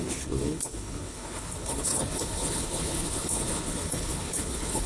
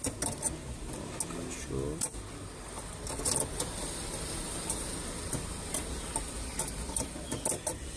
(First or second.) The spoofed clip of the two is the first